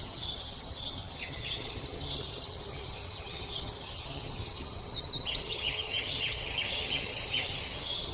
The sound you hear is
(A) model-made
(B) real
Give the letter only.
A